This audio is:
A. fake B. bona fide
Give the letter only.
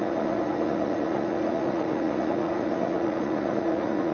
A